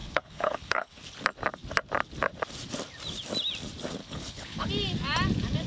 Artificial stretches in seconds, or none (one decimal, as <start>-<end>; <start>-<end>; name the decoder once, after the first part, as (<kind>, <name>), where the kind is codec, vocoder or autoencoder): 0.0-0.9 (codec, HILCodec); 4.0-4.7